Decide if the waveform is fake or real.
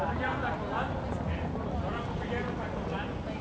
real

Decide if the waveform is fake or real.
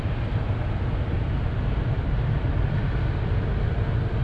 real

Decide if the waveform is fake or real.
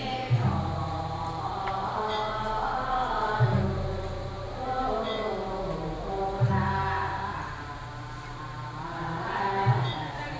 real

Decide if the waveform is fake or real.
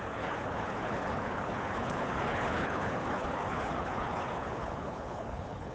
fake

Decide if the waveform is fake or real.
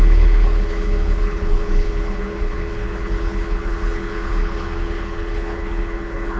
fake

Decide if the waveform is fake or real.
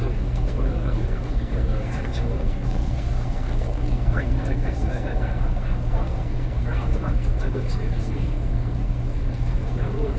fake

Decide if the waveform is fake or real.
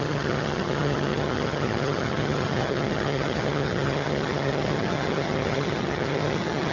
fake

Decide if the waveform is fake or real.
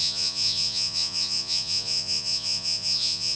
fake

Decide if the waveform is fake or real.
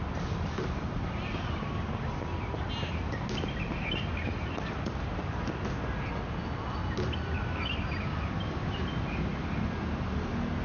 real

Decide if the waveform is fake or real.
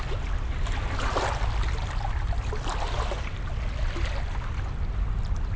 real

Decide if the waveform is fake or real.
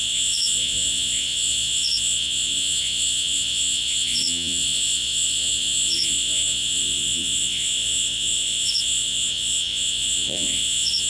fake